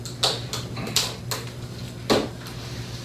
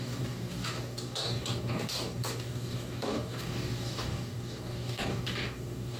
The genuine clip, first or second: first